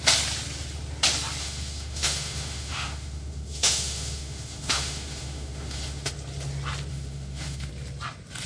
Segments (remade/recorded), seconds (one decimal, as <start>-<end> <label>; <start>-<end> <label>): 0.0-1.4 recorded; 1.4-6.1 remade; 6.1-6.9 recorded; 6.9-7.7 remade; 7.7-8.5 recorded